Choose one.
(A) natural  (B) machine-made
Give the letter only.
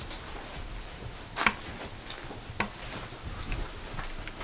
A